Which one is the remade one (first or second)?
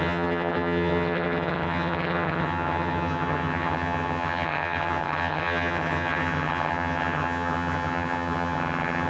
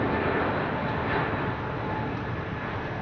first